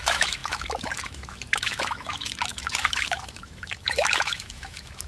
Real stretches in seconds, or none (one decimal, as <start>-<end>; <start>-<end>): none